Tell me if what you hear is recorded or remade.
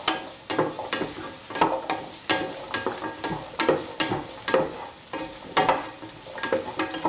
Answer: recorded